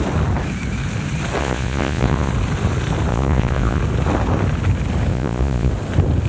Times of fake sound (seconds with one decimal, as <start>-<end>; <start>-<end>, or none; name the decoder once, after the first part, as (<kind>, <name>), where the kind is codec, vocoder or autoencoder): 1.4-2.3 (vocoder, Vocos); 3.1-3.8; 5.1-5.7